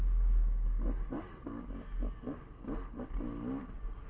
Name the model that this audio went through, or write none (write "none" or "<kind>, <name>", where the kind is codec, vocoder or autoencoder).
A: none